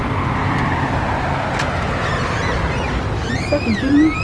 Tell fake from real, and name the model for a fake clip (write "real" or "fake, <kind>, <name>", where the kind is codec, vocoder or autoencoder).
real